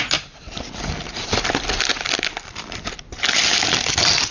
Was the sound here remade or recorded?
recorded